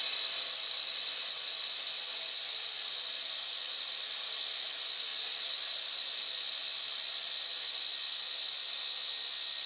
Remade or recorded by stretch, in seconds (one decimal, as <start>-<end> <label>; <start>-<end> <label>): 0.0-9.7 recorded